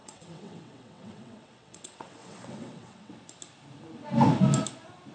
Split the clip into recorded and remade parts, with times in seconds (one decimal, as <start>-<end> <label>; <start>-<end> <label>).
0.0-3.1 remade; 3.1-5.1 recorded